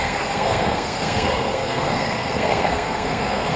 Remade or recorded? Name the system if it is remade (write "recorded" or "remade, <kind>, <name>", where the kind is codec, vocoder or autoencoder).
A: remade, codec, SNAC